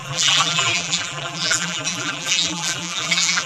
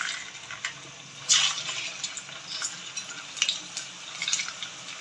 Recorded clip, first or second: second